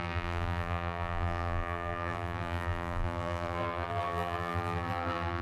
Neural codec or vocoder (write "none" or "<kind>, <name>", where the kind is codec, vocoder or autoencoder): vocoder, BigVGAN v2